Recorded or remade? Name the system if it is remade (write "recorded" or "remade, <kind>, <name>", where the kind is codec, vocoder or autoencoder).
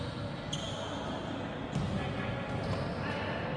recorded